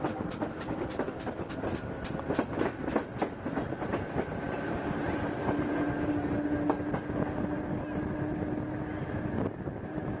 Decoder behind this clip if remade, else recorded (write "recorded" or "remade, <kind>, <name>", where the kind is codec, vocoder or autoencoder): recorded